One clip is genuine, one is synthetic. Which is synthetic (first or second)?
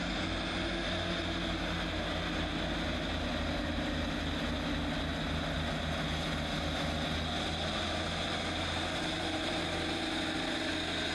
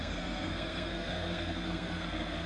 second